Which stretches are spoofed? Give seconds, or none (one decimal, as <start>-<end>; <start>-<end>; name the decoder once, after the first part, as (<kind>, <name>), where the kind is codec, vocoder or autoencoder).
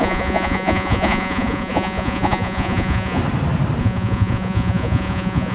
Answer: 0.0-3.2 (vocoder, Vocos); 3.8-5.5